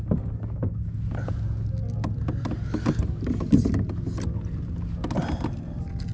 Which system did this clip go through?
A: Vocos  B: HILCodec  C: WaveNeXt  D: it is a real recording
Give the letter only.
D